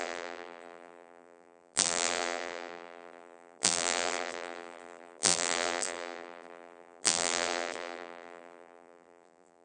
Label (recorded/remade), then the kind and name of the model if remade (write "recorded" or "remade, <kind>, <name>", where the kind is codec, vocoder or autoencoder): remade, vocoder, BigVGAN v2